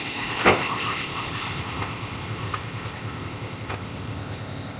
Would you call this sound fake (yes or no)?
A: yes